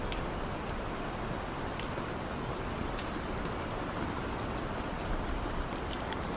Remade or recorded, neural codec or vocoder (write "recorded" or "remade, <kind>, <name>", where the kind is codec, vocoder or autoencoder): recorded